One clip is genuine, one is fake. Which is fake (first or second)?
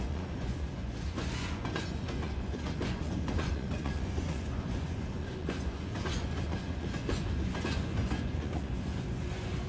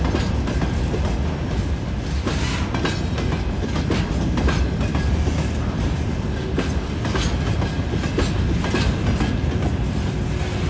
first